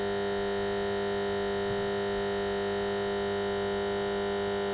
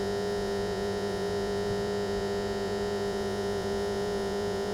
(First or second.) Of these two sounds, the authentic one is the first